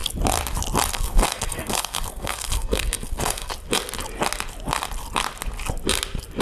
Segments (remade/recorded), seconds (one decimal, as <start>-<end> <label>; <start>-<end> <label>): 0.0-0.9 recorded; 0.9-3.5 remade; 3.5-6.4 recorded